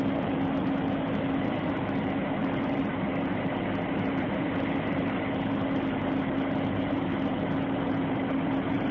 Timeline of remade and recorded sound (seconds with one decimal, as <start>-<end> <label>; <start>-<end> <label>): 0.0-2.4 recorded; 2.4-3.1 remade; 3.1-8.9 recorded